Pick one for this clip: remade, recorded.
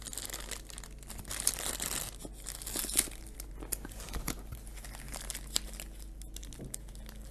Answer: recorded